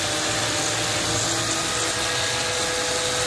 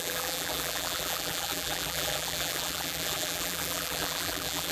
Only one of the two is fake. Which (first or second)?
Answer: second